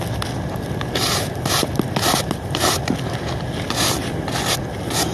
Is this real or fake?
fake